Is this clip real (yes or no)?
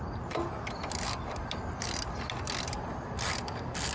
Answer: yes